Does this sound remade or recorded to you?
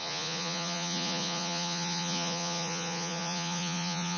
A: remade